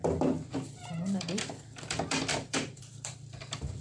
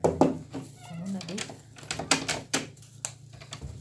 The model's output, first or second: first